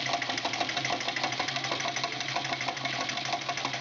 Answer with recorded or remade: recorded